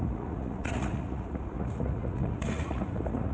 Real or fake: fake